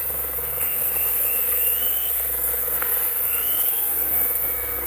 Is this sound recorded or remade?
remade